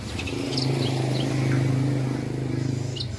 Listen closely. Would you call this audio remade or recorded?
recorded